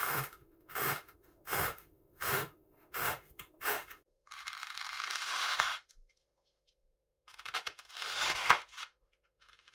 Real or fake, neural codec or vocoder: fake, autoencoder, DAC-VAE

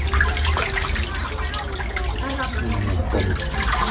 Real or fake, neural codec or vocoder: real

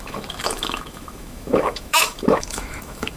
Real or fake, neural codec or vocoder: fake, autoencoder, DAC-VAE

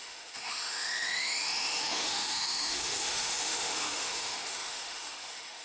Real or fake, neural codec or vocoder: fake, autoencoder, DAC-VAE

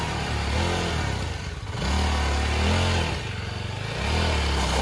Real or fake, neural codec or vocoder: real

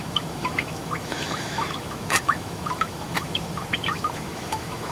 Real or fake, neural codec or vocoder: fake, autoencoder, DAC-VAE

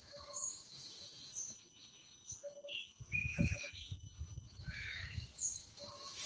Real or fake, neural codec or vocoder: fake, autoencoder, DAC-VAE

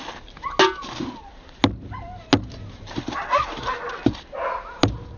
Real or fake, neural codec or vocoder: real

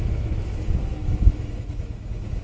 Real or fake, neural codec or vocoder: fake, autoencoder, DAC-VAE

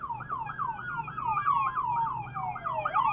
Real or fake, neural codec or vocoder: real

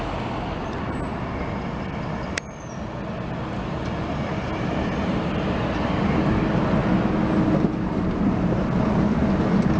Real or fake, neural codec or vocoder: real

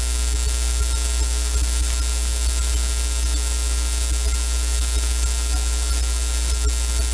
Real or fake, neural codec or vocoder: real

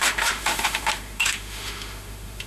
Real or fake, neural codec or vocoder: fake, autoencoder, DAC-VAE